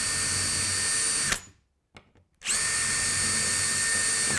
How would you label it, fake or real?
real